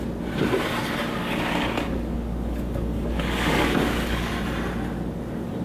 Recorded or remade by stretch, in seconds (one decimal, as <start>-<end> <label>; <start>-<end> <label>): 0.0-1.2 recorded; 1.2-4.3 remade; 4.3-5.6 recorded

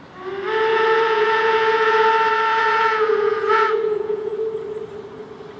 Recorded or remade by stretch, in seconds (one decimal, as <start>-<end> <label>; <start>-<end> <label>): 0.0-0.7 recorded; 0.7-2.1 remade; 2.1-2.5 recorded; 2.5-4.3 remade; 4.3-5.6 recorded